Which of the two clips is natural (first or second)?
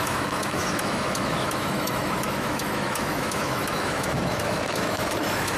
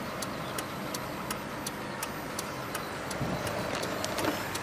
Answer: second